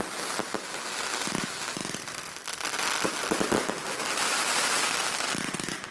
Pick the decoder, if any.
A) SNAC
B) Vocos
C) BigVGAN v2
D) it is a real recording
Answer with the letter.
D